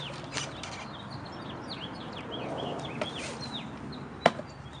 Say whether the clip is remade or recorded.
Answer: recorded